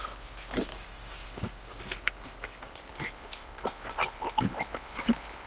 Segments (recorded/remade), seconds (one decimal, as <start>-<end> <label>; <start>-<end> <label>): 0.0-0.7 recorded; 0.7-2.9 remade; 2.9-5.5 recorded